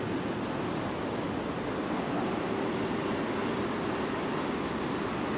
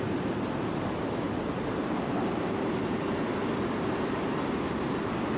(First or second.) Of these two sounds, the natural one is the first